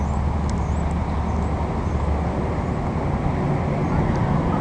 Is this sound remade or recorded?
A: recorded